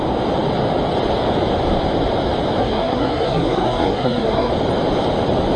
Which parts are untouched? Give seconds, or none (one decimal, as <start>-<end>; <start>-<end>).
0.0-2.6; 4.5-5.6